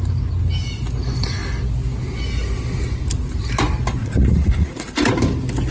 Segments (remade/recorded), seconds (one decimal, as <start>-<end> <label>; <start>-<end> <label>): 0.0-4.0 recorded; 4.0-4.9 remade; 4.9-5.7 recorded